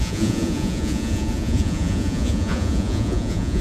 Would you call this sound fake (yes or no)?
yes